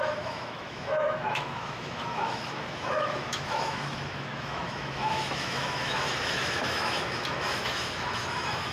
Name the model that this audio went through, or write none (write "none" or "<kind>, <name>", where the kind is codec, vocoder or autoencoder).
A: autoencoder, DAC-VAE